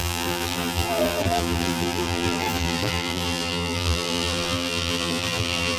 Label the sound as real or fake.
fake